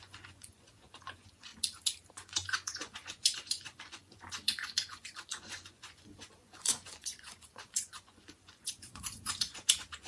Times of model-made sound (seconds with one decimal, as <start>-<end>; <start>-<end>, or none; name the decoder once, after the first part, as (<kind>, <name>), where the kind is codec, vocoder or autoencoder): 0.0-1.5 (vocoder, Vocos); 2.1-10.1

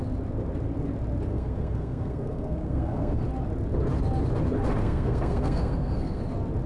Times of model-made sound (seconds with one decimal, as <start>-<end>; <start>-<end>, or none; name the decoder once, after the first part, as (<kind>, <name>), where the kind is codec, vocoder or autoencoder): 1.3-3.2 (codec, SNAC); 4.8-6.2